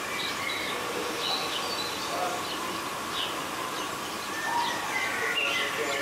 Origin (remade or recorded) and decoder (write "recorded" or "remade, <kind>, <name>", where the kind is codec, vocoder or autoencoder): recorded